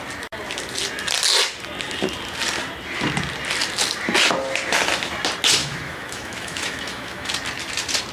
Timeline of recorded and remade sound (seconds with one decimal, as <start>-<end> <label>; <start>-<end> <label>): 0.0-5.6 recorded; 5.6-7.3 remade; 7.3-8.1 recorded